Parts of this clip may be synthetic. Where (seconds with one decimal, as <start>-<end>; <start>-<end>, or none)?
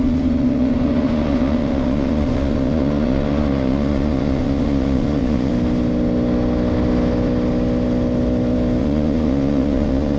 0.0-5.5; 8.8-10.2